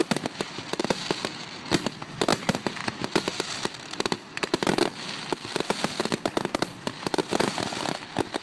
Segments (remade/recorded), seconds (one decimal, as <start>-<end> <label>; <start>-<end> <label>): 0.0-8.4 recorded